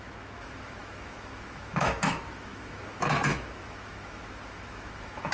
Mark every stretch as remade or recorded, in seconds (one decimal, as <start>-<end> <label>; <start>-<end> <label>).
0.0-5.3 remade